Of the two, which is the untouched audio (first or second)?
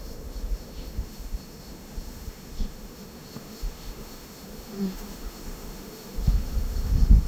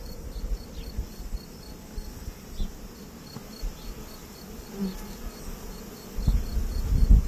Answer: second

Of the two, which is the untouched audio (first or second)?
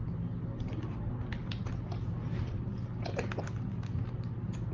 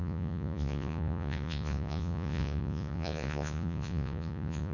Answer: first